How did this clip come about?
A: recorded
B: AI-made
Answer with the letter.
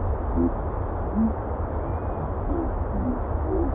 A